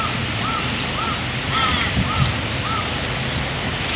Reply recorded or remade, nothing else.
recorded